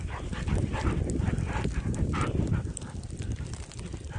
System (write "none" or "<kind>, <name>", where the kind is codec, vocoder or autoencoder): none